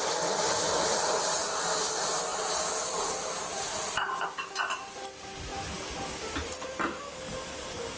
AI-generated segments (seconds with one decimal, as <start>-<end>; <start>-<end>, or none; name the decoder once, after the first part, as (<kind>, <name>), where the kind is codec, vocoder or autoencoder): 0.9-1.4 (vocoder, BigVGAN v2)